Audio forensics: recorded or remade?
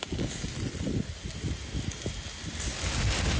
recorded